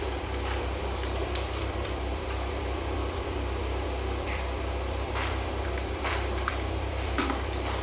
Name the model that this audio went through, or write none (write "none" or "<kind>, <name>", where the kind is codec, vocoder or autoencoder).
vocoder, BigVGAN v2